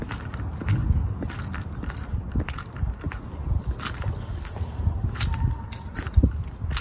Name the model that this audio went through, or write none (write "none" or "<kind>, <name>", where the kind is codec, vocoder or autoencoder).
none